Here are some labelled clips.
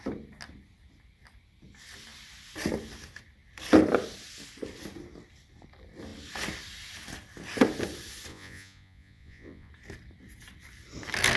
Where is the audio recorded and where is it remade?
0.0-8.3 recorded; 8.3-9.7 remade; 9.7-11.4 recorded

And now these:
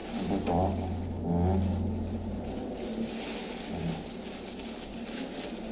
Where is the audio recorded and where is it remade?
0.0-5.7 recorded

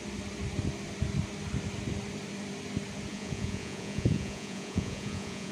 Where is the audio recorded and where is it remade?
0.0-3.1 recorded; 3.1-5.5 remade

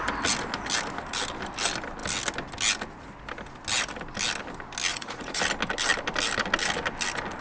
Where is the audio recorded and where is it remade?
0.0-4.9 recorded; 4.9-5.4 remade; 5.4-7.4 recorded

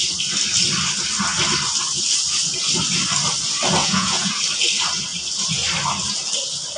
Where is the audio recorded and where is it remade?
0.0-3.8 recorded; 3.8-4.4 remade; 4.4-6.8 recorded

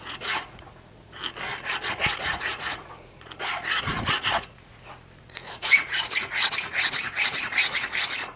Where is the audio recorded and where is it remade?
0.0-1.2 remade; 1.2-1.9 recorded; 1.9-8.4 remade